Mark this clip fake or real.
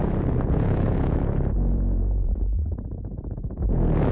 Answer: fake